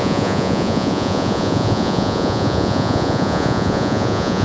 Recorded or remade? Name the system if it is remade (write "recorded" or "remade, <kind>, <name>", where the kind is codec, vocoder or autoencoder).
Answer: remade, vocoder, Vocos